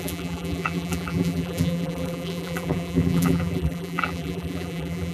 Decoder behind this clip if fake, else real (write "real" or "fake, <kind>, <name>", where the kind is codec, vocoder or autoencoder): fake, vocoder, BigVGAN v2